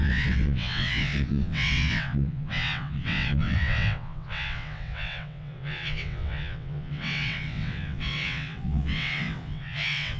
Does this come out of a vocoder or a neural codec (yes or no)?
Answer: yes